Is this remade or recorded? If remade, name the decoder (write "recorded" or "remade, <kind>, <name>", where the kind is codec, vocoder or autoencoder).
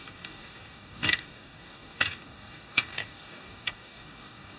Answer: remade, codec, DAC